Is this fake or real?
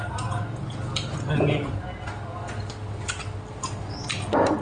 real